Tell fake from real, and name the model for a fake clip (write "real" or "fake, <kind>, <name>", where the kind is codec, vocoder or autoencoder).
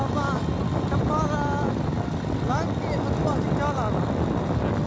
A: real